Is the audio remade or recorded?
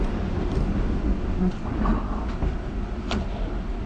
recorded